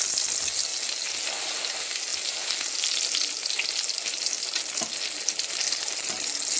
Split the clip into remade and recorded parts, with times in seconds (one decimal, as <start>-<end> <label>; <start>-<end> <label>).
0.0-6.6 recorded